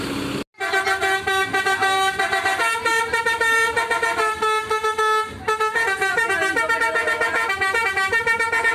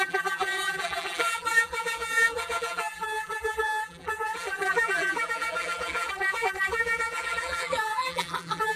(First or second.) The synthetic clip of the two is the second